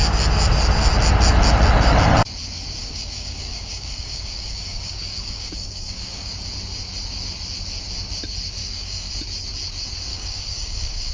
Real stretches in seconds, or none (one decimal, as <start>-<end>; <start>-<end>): 0.0-2.8; 6.3-8.6; 9.1-10.1

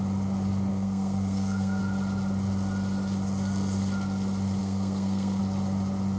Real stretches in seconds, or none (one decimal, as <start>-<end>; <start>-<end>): 0.0-0.7; 1.8-4.6; 5.4-6.2

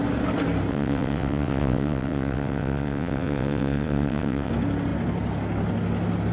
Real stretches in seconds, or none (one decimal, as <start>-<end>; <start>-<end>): 0.0-0.7; 4.5-6.3

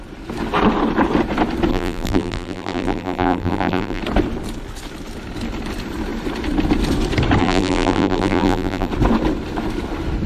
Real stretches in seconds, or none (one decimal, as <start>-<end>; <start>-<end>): 0.0-1.7; 4.0-7.4; 8.9-10.3

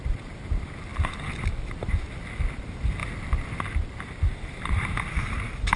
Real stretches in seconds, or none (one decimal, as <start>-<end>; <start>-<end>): 0.9-2.6; 3.0-3.6